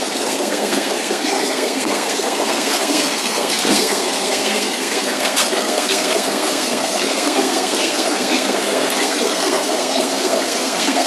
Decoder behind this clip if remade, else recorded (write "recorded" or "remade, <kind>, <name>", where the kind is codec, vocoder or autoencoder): remade, codec, SNAC